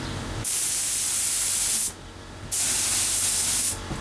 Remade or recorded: recorded